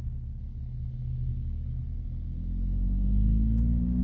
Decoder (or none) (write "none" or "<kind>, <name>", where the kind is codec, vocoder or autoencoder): none